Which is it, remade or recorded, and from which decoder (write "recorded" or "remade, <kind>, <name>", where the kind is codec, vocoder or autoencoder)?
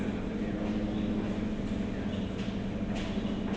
recorded